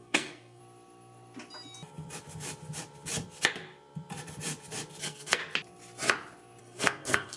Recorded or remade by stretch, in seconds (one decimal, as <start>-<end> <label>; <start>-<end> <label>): 0.0-0.6 remade; 0.6-5.0 recorded; 5.0-5.4 remade; 5.4-6.6 recorded; 6.6-7.4 remade